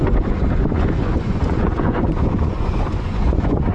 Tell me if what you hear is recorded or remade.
remade